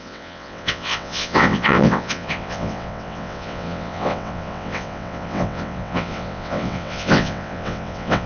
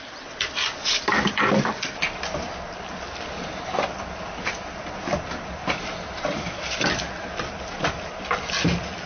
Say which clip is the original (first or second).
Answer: second